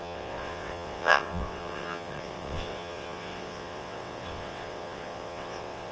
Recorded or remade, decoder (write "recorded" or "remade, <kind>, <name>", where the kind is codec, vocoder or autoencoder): remade, vocoder, WaveNeXt